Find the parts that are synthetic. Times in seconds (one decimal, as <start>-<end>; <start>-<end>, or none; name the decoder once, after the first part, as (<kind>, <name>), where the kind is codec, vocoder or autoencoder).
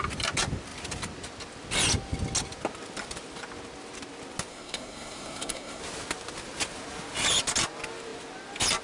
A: 4.5-5.8 (codec, SNAC)